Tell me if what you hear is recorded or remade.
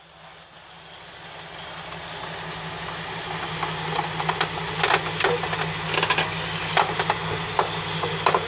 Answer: recorded